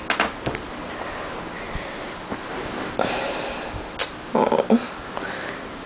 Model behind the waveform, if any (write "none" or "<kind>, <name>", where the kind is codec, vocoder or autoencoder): none